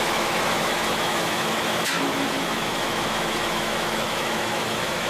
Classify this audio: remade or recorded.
remade